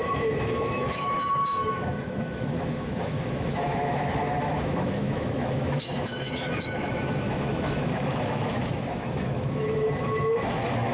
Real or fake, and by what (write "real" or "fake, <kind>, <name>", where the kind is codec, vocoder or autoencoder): fake, autoencoder, DAC-VAE